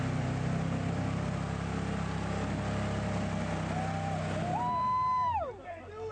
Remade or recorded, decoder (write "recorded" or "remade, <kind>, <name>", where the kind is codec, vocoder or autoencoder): recorded